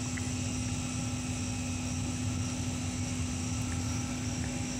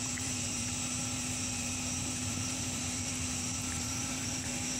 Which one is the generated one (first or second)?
second